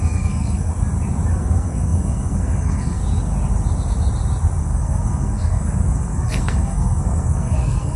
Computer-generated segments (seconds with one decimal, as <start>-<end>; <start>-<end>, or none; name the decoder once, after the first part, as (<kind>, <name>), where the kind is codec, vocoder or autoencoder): 0.0-0.7 (codec, SNAC); 1.3-3.0; 4.6-8.0